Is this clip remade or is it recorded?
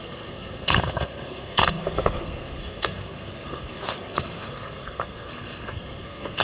remade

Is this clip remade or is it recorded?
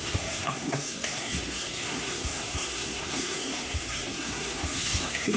remade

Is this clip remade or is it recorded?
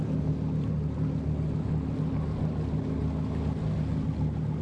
recorded